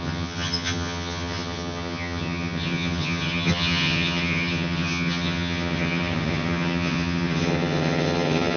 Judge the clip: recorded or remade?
remade